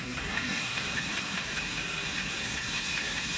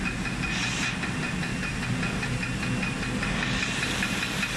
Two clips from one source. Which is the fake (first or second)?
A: first